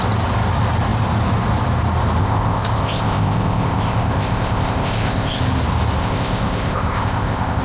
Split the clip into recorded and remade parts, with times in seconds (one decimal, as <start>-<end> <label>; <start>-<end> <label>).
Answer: 0.0-2.2 recorded; 2.2-5.4 remade; 5.4-6.0 recorded; 6.0-7.6 remade

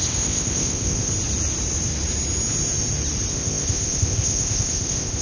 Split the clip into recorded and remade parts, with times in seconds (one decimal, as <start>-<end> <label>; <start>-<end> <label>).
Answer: 0.0-1.1 remade; 1.1-3.3 recorded; 3.3-5.2 remade

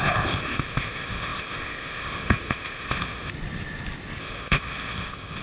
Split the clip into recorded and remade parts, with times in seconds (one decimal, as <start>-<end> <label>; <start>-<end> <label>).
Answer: 0.0-3.3 remade; 3.3-4.2 recorded; 4.2-5.4 remade

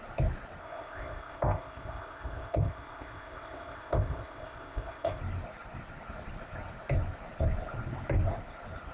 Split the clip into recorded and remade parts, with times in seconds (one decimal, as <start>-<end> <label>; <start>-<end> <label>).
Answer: 0.0-0.6 recorded; 0.6-5.2 remade; 5.2-8.9 recorded

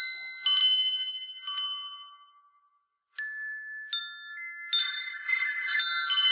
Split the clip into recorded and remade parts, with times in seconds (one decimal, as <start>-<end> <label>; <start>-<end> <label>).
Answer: 0.0-4.8 recorded; 4.8-5.8 remade; 5.8-6.3 recorded

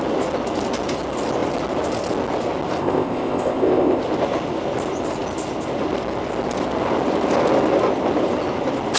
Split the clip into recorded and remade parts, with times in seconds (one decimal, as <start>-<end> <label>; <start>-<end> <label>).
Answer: 0.0-2.8 recorded; 2.8-4.0 remade; 4.0-9.0 recorded